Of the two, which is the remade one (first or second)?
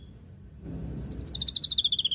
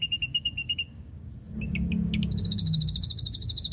second